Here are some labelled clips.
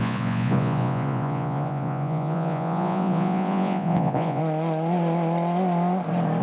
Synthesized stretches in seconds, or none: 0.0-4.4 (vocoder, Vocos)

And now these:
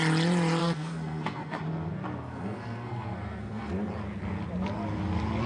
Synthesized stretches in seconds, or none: 0.6-1.6 (codec, SNAC); 2.3-3.7